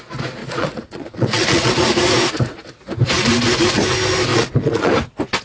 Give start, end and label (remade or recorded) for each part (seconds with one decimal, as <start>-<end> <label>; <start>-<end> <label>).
0.0-0.4 recorded; 0.4-1.7 remade; 1.7-4.3 recorded; 4.3-4.9 remade; 4.9-5.4 recorded